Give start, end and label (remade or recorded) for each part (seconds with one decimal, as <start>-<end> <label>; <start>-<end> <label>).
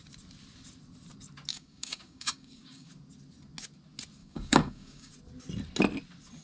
0.0-1.5 recorded; 1.5-2.9 remade; 2.9-4.2 recorded; 4.2-5.1 remade; 5.1-6.4 recorded